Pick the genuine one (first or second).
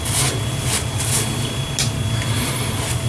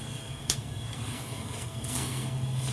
first